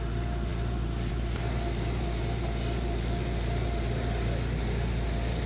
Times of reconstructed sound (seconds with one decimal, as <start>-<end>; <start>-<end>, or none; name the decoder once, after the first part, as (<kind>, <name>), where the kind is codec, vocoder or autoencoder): none